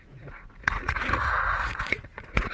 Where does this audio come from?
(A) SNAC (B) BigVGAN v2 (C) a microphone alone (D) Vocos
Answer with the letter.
D